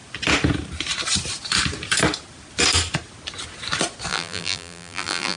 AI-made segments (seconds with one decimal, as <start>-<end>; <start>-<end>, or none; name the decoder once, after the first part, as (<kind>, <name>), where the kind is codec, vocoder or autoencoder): 4.1-5.4 (vocoder, BigVGAN v2)